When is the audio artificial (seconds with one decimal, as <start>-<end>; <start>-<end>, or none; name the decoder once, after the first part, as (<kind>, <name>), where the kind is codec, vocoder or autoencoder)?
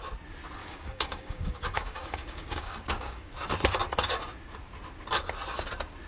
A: 0.6-3.3 (codec, DAC)